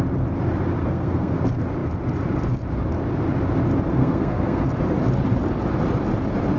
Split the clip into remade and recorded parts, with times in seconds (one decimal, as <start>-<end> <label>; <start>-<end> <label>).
0.0-0.8 recorded; 0.8-1.4 remade; 1.4-4.0 recorded; 4.0-4.6 remade; 4.6-6.6 recorded